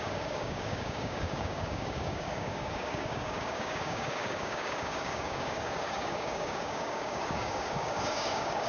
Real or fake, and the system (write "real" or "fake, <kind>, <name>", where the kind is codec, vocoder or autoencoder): fake, codec, DAC